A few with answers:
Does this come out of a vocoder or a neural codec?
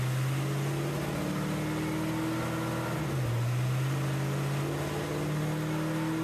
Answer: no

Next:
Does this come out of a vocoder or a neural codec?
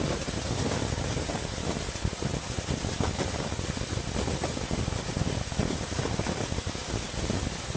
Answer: no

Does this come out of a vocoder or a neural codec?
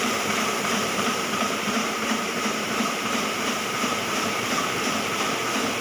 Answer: yes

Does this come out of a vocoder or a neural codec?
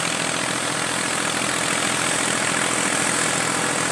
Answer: no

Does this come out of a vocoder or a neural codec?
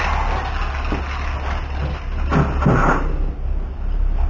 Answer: no